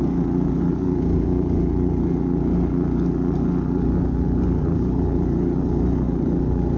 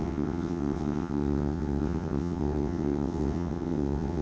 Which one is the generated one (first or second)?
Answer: second